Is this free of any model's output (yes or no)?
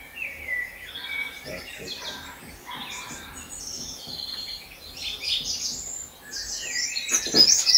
yes